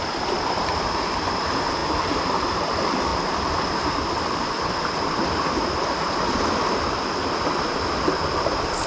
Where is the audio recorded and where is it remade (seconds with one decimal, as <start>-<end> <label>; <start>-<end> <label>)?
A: 0.0-8.9 recorded